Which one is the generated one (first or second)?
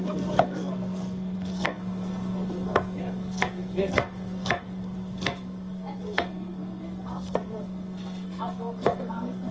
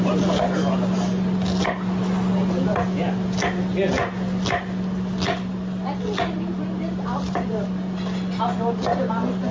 first